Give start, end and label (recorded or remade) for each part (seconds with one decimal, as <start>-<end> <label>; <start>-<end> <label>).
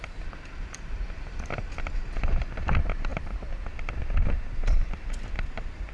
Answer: 0.0-3.1 remade; 3.1-4.0 recorded; 4.0-5.9 remade